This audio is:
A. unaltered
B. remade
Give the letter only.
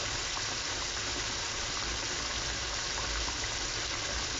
A